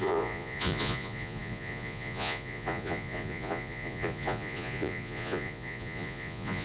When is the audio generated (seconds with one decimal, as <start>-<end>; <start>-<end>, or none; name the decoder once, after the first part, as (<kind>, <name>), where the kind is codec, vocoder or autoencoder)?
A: 0.0-6.6 (vocoder, Vocos)